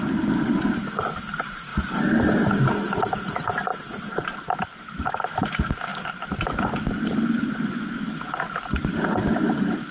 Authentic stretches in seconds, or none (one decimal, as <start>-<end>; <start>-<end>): 0.0-9.9